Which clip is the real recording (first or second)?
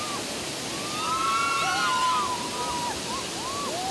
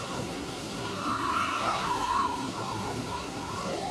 first